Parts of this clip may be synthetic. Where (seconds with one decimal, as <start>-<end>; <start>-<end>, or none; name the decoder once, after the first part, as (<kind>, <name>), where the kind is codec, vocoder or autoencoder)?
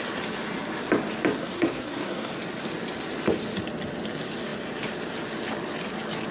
1.4-2.3 (codec, SNAC)